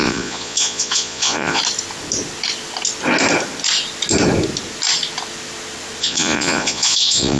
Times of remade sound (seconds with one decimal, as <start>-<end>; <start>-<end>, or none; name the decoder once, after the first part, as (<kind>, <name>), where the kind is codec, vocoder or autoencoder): 0.0-1.6 (vocoder, Vocos); 6.0-7.4